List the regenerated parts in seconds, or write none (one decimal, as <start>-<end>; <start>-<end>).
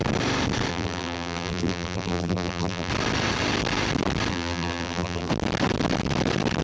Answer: 0.7-2.9; 4.3-5.3